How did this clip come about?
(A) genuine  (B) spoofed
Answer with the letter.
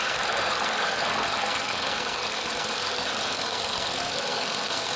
B